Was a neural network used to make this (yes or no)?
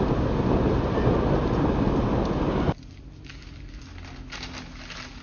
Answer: no